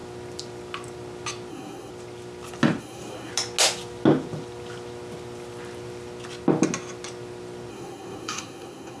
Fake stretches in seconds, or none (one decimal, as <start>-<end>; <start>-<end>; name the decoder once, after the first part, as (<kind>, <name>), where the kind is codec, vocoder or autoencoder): 1.5-1.9 (codec, SNAC); 2.8-3.3; 7.7-9.0